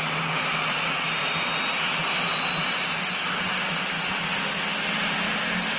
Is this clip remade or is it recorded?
recorded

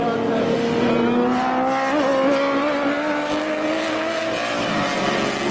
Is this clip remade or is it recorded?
recorded